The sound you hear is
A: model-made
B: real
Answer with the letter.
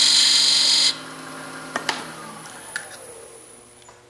B